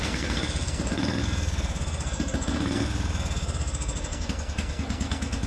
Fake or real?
fake